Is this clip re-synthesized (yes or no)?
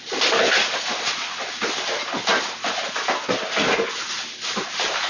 no